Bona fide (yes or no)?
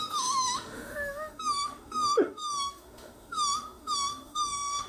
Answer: no